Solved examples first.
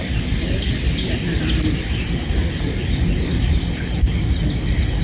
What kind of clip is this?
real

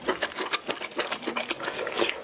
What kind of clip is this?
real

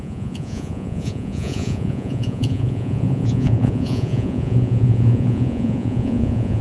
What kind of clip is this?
fake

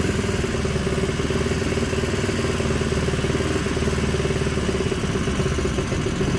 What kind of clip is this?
real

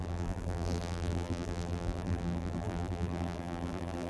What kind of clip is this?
fake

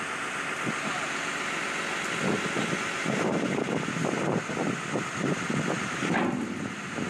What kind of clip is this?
real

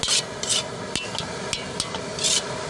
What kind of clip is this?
real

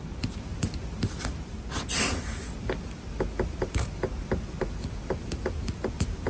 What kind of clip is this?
real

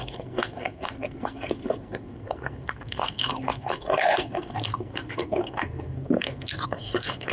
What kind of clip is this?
fake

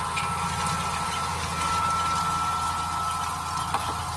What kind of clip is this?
real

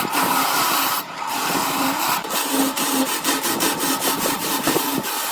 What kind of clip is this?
fake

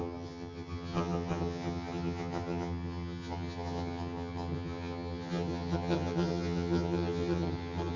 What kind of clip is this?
fake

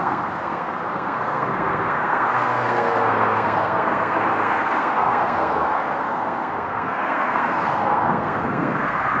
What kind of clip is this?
fake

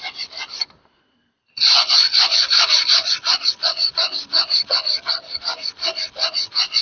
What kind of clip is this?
real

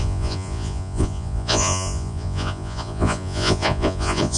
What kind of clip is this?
fake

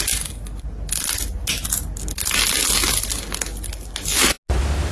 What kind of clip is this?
real